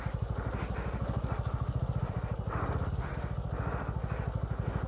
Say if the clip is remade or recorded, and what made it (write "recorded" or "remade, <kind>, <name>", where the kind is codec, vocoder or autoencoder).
recorded